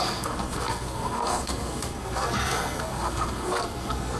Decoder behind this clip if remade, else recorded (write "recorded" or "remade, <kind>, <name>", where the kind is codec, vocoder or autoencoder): remade, codec, SNAC